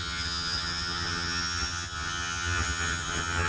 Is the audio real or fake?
fake